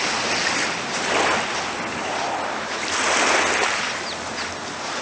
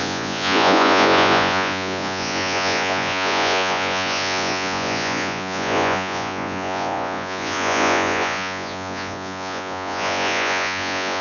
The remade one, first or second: second